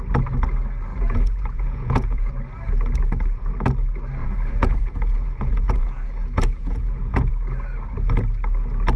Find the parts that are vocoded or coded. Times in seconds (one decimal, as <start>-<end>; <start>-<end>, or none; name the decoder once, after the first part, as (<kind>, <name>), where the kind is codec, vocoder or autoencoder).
0.9-2.3 (vocoder, Vocos); 4.2-7.3